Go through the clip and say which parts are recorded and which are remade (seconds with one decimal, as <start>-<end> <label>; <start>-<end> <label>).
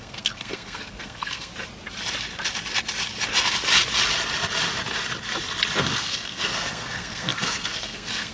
0.0-1.5 remade; 1.5-5.8 recorded; 5.8-8.3 remade